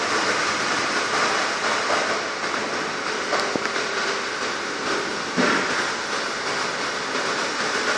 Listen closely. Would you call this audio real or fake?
real